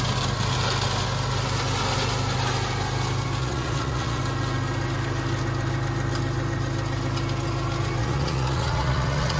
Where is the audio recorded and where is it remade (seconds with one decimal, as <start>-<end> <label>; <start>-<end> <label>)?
0.0-3.4 recorded; 3.4-4.2 remade; 4.2-8.0 recorded; 8.0-9.4 remade